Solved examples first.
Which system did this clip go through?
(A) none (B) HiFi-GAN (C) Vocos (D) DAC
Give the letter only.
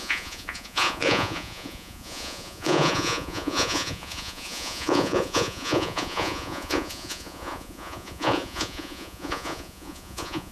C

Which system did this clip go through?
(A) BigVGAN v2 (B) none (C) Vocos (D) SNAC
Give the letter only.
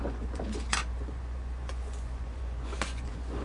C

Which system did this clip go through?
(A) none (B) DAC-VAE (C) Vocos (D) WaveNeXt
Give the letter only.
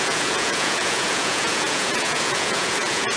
C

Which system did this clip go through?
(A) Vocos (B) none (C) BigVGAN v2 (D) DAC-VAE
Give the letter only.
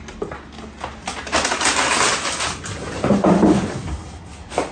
B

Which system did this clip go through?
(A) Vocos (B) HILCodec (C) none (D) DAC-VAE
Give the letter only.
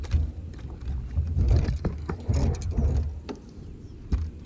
C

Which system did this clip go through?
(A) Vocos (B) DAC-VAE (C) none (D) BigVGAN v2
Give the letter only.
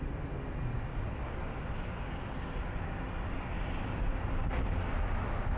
C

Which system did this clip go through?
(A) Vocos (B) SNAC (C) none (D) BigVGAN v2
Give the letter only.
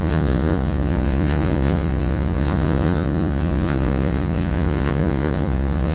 A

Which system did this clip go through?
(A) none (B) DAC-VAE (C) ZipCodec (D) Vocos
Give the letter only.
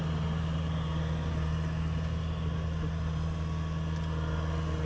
A